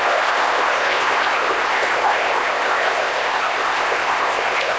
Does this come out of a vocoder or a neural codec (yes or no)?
yes